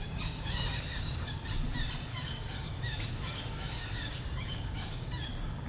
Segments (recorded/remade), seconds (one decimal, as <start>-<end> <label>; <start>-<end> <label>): 0.0-1.4 remade; 1.4-2.1 recorded; 2.1-5.7 remade